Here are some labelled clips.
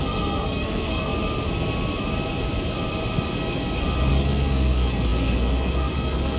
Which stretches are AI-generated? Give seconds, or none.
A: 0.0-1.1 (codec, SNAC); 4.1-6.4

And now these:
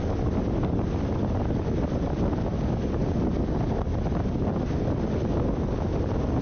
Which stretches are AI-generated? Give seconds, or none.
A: none